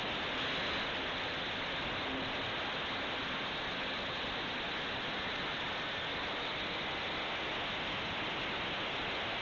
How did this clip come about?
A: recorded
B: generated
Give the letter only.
A